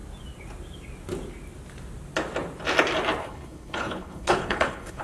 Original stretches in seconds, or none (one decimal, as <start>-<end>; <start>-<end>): 0.0-3.2